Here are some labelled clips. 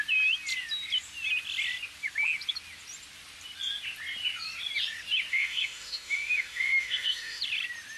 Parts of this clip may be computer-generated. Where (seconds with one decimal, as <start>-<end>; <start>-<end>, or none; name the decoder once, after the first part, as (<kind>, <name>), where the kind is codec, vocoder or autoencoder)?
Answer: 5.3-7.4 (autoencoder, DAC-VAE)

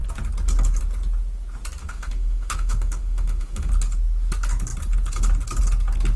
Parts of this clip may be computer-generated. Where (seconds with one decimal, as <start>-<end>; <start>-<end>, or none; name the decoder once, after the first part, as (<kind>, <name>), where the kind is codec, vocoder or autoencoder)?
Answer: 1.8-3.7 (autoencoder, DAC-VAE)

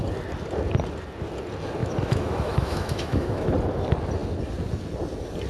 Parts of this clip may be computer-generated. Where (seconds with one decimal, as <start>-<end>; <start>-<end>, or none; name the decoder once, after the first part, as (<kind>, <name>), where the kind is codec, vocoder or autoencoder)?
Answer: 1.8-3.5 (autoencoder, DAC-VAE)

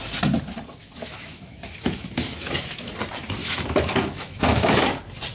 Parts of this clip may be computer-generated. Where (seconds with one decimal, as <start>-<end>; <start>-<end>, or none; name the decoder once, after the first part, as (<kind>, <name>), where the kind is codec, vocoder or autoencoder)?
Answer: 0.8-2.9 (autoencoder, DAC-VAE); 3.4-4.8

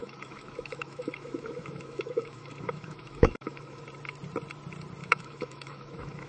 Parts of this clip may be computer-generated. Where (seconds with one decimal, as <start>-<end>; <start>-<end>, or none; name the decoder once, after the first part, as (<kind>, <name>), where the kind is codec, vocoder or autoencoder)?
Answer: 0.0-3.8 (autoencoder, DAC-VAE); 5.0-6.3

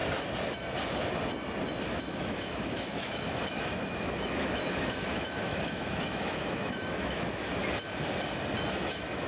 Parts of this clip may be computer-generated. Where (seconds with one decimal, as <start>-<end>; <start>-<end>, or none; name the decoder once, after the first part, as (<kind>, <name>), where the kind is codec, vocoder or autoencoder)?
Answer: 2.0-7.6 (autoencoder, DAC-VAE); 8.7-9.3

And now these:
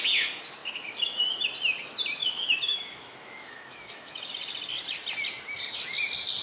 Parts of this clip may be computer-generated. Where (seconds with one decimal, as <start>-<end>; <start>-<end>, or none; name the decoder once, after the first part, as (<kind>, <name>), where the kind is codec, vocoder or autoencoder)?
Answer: 0.6-1.4 (autoencoder, DAC-VAE); 2.2-4.3

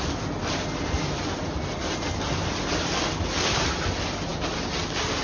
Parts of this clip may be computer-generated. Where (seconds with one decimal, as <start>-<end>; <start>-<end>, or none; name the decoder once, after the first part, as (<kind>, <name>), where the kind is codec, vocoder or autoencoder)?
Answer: none